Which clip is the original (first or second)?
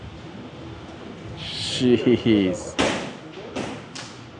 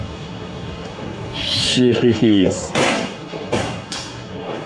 first